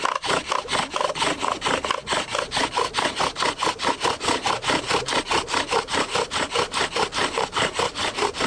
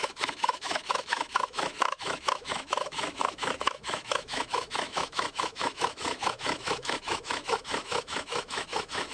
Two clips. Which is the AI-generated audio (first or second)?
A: second